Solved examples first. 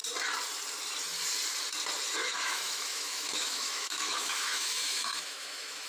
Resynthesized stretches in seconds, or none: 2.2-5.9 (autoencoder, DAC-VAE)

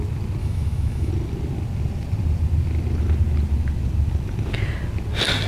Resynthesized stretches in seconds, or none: 0.4-1.1 (autoencoder, DAC-VAE)

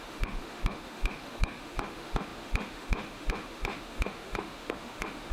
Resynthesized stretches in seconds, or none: 0.0-5.3 (autoencoder, DAC-VAE)

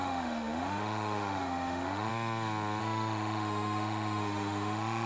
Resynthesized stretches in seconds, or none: 0.0-2.1 (autoencoder, DAC-VAE); 2.8-5.1

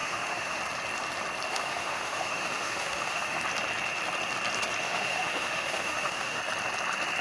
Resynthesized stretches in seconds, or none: 0.0-0.6 (autoencoder, DAC-VAE); 1.5-3.4; 4.8-6.4

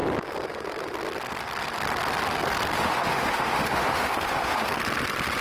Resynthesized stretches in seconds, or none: 2.8-4.7 (autoencoder, DAC-VAE)

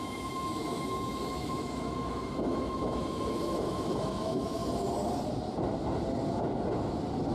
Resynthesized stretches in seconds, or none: 0.0-4.6 (autoencoder, DAC-VAE)

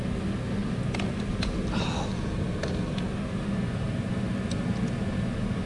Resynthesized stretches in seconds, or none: none